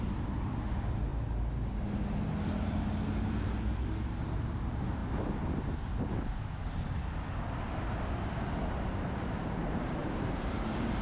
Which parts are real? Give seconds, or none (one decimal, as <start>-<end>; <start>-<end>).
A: 1.1-3.3; 5.0-8.7